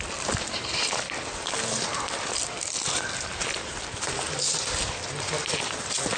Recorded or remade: recorded